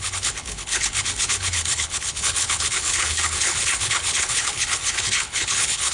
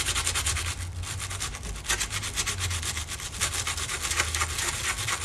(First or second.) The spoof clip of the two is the first